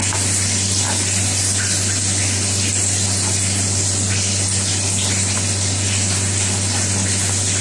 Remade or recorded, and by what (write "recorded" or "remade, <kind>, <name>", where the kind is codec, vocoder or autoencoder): recorded